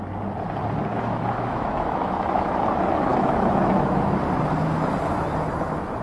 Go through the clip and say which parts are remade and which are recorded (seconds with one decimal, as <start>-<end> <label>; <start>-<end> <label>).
0.0-0.9 recorded; 0.9-2.6 remade; 2.6-3.1 recorded; 3.1-4.2 remade; 4.2-6.0 recorded